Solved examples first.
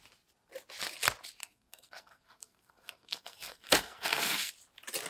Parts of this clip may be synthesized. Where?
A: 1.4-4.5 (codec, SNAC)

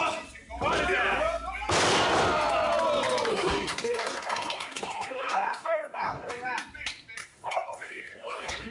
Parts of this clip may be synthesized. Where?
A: 3.3-6.3 (codec, SNAC); 7.2-8.7